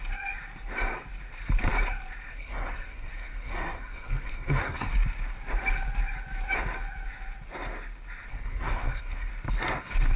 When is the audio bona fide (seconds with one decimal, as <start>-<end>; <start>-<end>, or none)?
0.0-2.3; 4.9-8.3; 9.3-10.2